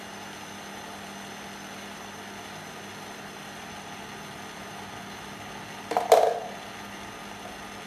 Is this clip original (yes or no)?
yes